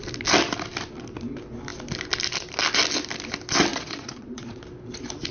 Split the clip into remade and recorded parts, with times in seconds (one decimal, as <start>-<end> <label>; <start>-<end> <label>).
0.0-3.7 recorded; 3.7-4.6 remade; 4.6-5.3 recorded